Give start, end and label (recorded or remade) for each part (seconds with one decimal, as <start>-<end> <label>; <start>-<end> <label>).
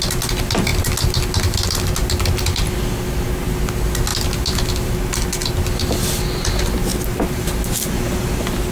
0.0-8.7 recorded